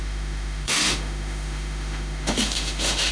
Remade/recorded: remade